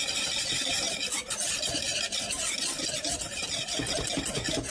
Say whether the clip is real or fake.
real